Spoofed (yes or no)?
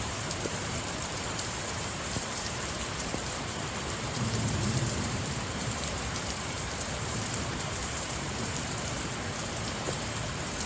yes